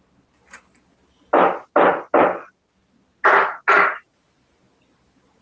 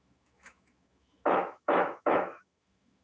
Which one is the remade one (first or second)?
second